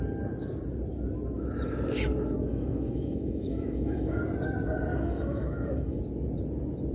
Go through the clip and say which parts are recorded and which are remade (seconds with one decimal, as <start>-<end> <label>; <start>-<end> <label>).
0.0-2.5 recorded; 2.5-4.2 remade; 4.2-4.9 recorded; 4.9-6.0 remade; 6.0-6.9 recorded